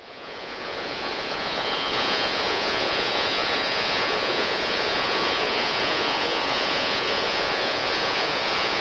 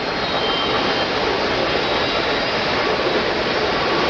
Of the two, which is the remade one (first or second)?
first